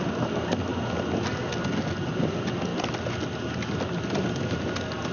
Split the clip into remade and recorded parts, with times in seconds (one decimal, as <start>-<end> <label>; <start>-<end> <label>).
0.0-5.1 recorded